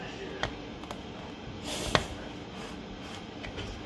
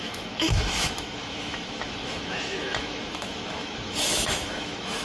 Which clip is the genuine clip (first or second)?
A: first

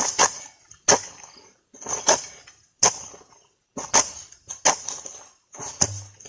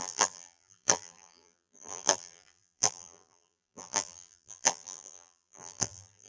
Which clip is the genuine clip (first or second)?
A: first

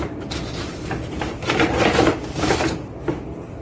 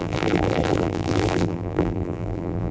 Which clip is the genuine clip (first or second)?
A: first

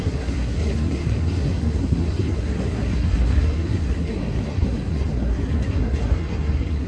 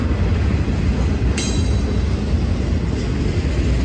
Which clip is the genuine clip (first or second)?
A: second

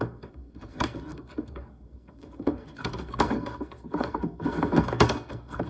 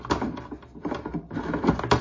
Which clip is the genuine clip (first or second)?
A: second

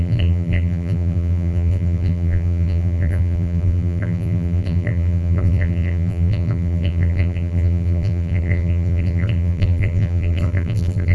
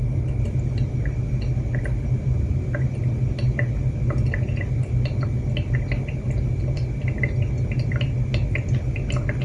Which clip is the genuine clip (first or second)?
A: second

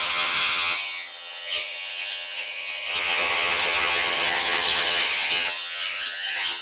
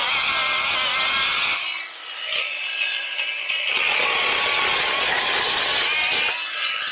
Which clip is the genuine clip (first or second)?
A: second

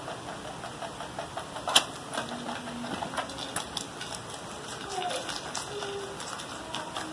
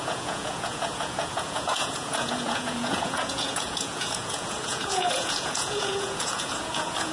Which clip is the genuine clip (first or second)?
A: first